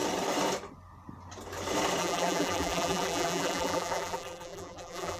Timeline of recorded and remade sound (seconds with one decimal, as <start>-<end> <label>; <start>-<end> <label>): 0.0-2.0 recorded; 2.0-5.2 remade